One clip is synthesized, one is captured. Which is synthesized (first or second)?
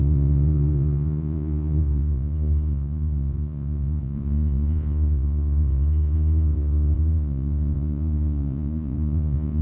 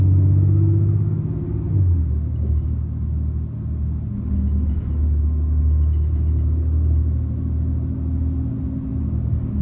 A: first